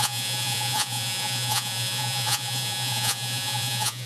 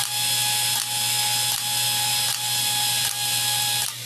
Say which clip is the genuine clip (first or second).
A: second